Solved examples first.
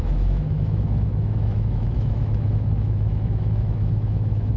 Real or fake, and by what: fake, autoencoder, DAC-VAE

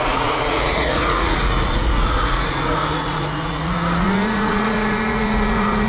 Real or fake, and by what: fake, vocoder, Vocos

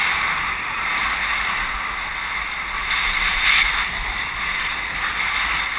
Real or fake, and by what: real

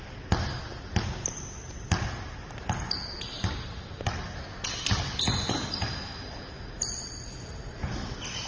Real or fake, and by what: real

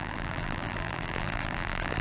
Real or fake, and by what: fake, vocoder, BigVGAN v2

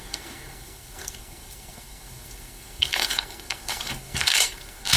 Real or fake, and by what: fake, codec, SNAC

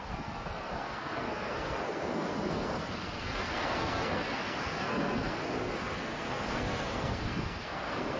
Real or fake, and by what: fake, codec, SNAC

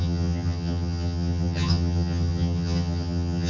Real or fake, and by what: fake, vocoder, HiFi-GAN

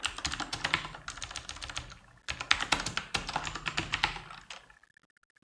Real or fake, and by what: real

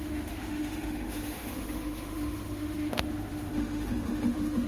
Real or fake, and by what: fake, autoencoder, DAC-VAE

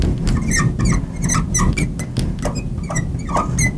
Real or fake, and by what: real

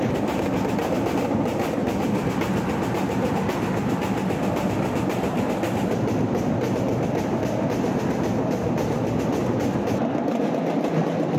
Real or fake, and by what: real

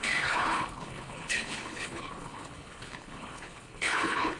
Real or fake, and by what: fake, codec, HILCodec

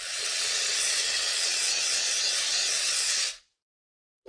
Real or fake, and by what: fake, vocoder, WaveNeXt